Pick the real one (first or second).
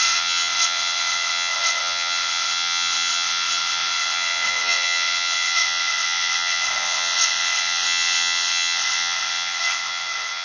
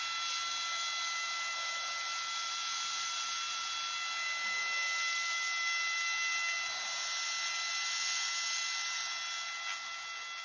second